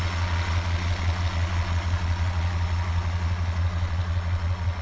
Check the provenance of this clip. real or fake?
fake